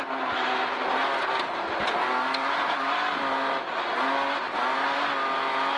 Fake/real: real